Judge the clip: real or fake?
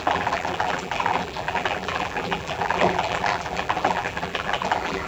fake